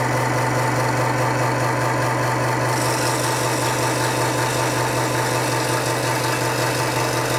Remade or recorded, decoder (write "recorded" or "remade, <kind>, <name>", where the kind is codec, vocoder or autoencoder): recorded